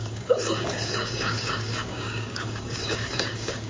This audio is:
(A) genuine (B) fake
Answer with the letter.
B